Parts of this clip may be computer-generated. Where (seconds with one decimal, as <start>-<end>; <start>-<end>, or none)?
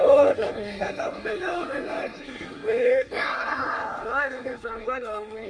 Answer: 0.0-5.5